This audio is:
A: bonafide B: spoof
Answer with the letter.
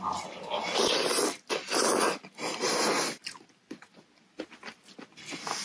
A